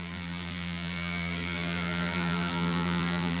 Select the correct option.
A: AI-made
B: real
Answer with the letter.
A